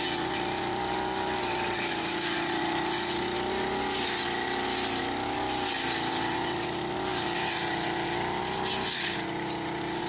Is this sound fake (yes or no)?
no